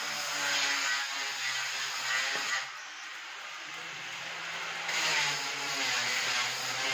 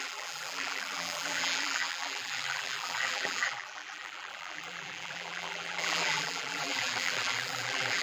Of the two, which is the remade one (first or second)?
second